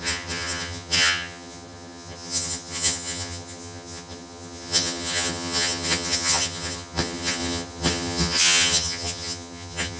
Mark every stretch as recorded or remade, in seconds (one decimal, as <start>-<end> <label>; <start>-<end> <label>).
0.0-10.0 remade